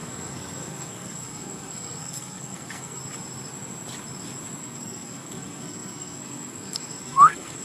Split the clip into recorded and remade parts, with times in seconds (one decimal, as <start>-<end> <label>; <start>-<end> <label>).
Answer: 0.0-3.0 remade; 3.0-4.6 recorded; 4.6-7.6 remade